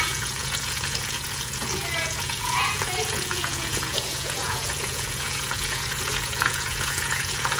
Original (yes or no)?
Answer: no